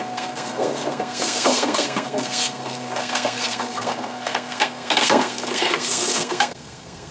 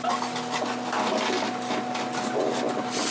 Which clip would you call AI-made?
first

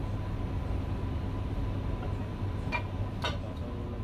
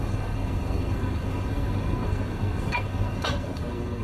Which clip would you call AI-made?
second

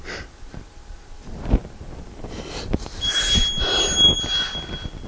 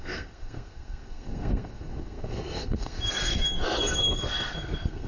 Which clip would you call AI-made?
second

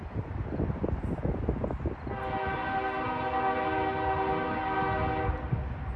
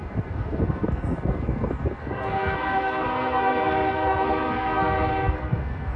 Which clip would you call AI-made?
second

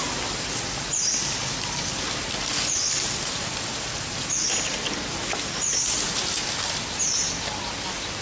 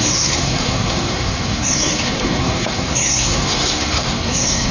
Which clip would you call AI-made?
second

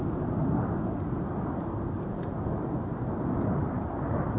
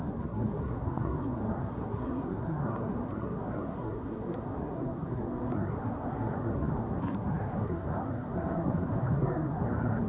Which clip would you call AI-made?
second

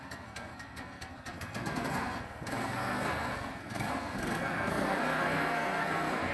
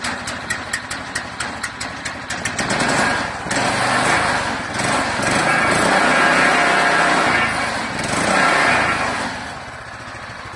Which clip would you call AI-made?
first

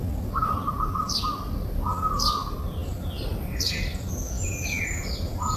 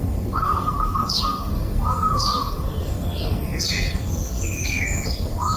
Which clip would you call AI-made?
second